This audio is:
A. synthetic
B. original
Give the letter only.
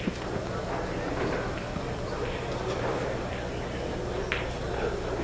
B